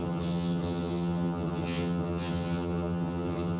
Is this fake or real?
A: fake